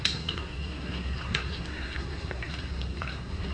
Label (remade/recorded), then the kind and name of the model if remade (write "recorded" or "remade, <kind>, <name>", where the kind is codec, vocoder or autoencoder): remade, codec, SNAC